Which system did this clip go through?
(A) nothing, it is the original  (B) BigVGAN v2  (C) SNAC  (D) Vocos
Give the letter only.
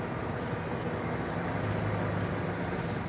A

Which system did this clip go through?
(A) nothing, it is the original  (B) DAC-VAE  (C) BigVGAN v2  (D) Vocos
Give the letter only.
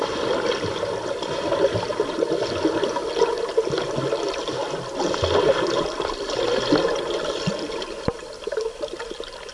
A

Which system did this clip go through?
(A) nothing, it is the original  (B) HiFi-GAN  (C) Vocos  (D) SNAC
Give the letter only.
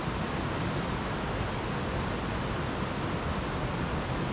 A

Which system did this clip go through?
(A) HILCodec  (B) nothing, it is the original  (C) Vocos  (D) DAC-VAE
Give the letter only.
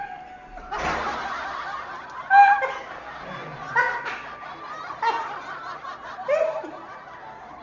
B